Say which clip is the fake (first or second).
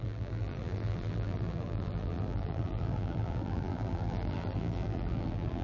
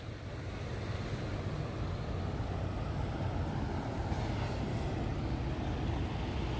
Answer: first